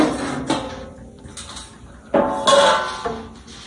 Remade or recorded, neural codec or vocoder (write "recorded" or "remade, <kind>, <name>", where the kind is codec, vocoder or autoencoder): recorded